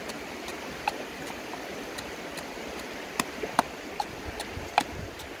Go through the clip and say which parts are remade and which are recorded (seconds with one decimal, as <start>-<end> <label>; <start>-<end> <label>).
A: 0.0-0.5 recorded; 0.5-2.3 remade; 2.3-5.4 recorded